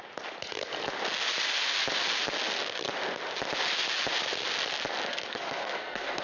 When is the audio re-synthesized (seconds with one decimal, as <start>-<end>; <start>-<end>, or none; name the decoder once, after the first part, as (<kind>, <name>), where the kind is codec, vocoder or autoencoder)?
5.1-6.2 (codec, SNAC)